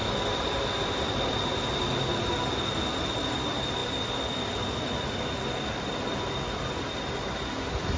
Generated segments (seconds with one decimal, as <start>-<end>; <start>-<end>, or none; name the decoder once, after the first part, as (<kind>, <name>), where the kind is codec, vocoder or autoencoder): none